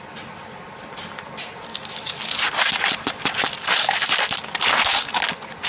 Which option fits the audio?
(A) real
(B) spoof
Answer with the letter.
A